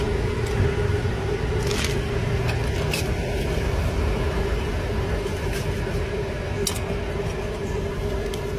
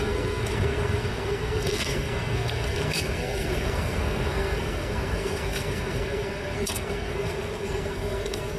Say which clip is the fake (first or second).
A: second